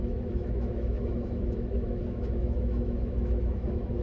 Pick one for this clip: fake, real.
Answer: fake